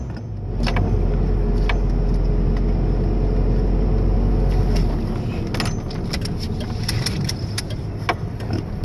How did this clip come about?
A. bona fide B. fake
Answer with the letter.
A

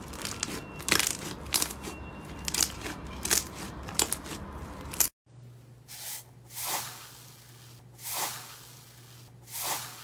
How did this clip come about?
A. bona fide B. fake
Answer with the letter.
A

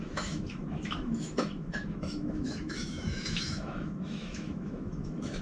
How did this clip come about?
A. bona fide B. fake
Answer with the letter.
B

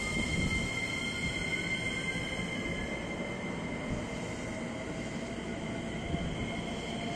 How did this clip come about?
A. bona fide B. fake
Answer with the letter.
A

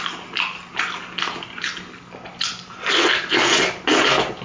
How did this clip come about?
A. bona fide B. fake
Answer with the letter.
A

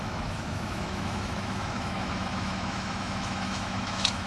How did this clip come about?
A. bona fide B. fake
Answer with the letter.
B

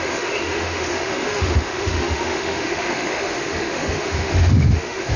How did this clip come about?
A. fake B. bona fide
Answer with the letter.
A